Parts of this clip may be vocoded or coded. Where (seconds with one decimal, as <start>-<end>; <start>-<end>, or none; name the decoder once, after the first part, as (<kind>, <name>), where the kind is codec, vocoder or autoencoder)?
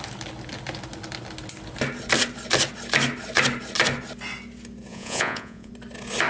4.9-5.7 (vocoder, Vocos)